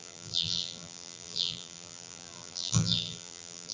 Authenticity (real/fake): fake